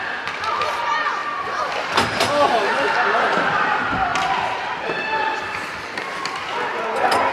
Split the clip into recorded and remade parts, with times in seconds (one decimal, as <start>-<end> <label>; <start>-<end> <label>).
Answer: 0.0-1.2 recorded; 1.2-2.3 remade; 2.3-7.3 recorded